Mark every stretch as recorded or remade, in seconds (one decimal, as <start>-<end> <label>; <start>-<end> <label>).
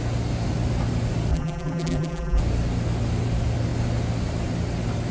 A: 0.0-1.3 recorded; 1.3-2.4 remade; 2.4-5.1 recorded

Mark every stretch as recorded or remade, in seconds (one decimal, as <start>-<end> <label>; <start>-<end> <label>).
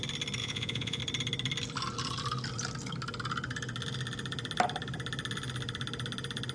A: 0.0-0.4 recorded; 0.4-1.0 remade; 1.0-6.5 recorded